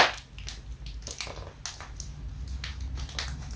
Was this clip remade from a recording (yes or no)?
no